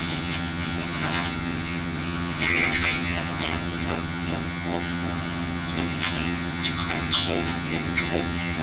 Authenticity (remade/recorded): remade